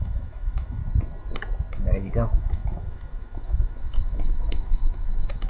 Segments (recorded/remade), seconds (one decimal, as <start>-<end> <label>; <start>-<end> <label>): 0.0-0.8 remade; 0.8-1.7 recorded; 1.7-5.5 remade